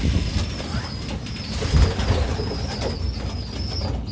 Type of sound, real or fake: real